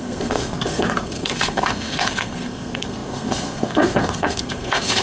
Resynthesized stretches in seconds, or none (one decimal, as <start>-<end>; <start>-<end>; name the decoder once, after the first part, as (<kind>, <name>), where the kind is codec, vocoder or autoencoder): 0.0-5.0 (codec, SNAC)